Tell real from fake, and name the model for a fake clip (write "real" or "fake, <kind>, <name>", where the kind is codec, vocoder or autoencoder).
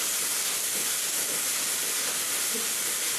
real